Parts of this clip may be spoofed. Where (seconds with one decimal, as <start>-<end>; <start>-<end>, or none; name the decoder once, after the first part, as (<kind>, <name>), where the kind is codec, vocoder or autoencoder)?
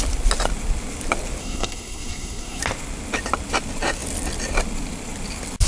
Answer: 1.4-2.6 (codec, SNAC)